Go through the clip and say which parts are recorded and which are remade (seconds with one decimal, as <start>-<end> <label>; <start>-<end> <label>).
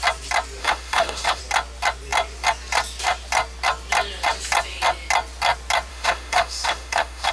0.0-0.6 recorded; 0.6-1.4 remade; 1.4-5.9 recorded; 5.9-7.3 remade